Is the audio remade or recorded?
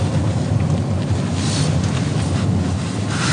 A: recorded